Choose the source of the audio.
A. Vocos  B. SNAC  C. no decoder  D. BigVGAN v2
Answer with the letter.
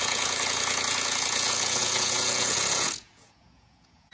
A